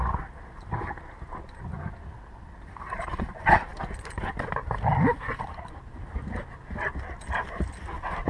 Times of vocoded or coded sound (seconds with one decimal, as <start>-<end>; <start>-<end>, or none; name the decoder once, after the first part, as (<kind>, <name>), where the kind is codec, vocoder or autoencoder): none